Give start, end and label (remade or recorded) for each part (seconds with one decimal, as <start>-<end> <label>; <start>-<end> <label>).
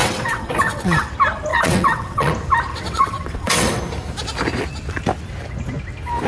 0.0-1.1 remade; 1.1-1.5 recorded; 1.5-2.3 remade; 2.3-2.7 recorded; 2.7-3.8 remade; 3.8-6.3 recorded